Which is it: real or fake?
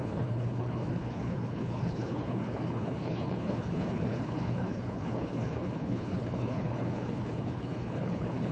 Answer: fake